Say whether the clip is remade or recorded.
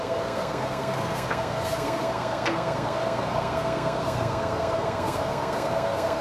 remade